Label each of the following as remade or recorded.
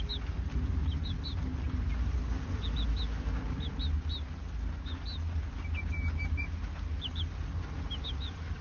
recorded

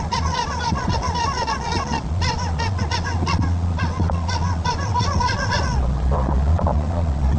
remade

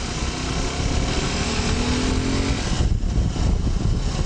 recorded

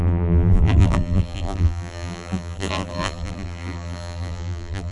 remade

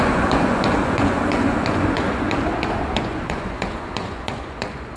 remade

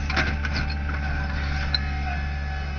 recorded